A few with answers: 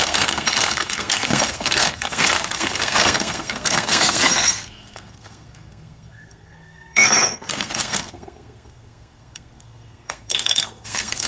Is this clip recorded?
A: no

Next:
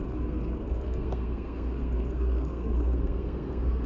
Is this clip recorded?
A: no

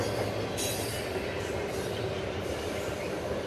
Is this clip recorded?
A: yes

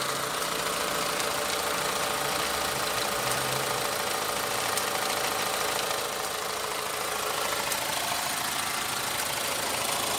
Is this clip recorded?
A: yes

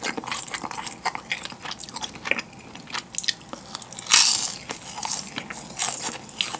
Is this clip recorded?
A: yes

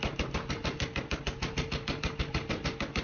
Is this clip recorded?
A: yes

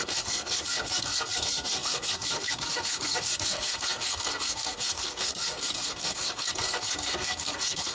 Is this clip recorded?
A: no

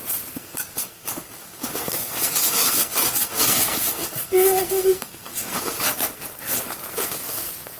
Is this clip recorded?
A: no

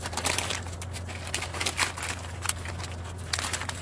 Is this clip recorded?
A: yes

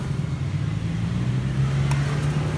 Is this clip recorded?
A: yes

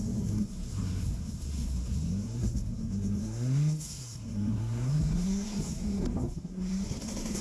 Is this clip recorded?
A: no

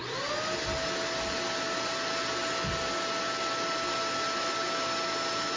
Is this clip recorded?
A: yes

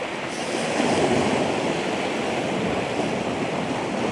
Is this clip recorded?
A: yes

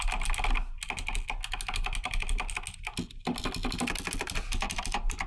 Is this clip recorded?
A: yes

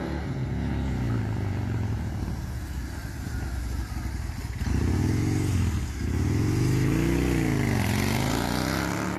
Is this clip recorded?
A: yes